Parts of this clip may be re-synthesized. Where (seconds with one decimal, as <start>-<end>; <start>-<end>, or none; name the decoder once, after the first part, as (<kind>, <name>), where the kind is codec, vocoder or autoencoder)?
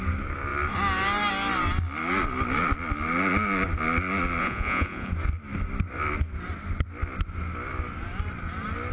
4.4-5.1 (vocoder, Vocos)